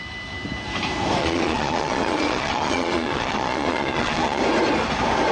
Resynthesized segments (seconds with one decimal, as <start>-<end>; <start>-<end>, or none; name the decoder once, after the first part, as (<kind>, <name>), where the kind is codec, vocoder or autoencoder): 1.2-4.4 (vocoder, Vocos)

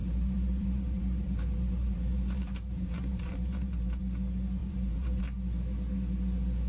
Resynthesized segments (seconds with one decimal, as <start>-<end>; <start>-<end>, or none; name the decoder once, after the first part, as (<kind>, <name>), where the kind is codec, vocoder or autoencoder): 0.0-4.0 (vocoder, BigVGAN v2); 4.6-5.2

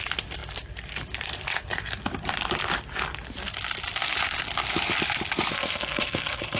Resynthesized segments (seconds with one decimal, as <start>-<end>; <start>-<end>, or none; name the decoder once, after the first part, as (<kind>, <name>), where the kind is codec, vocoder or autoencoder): 5.5-6.6 (codec, SNAC)

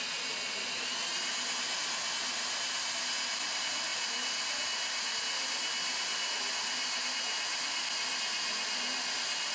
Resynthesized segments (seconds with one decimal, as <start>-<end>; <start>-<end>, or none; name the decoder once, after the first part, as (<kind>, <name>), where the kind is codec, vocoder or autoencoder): none